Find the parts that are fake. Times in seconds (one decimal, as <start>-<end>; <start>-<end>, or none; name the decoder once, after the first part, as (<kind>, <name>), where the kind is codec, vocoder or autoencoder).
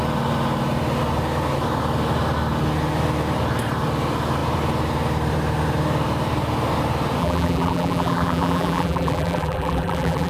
7.2-10.3 (vocoder, BigVGAN v2)